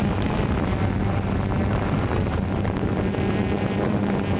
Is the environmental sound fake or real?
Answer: real